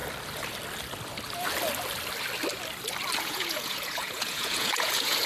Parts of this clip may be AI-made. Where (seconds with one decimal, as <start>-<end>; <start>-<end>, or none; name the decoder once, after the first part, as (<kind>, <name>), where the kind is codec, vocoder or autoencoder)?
3.2-5.3 (vocoder, Vocos)